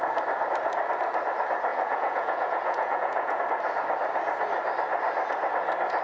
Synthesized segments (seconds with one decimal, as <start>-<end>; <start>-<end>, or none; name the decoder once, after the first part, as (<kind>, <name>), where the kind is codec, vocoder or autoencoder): 1.7-3.4 (vocoder, Vocos)